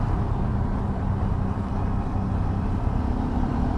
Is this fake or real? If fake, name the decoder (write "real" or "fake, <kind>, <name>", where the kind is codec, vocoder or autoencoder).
fake, vocoder, BigVGAN v2